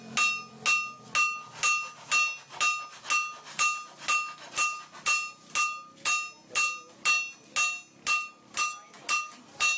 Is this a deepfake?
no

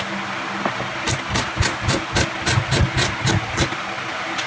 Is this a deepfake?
no